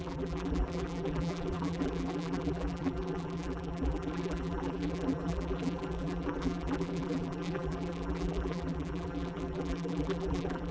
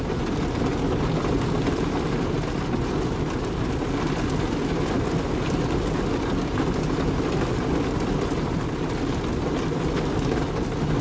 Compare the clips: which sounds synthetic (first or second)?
first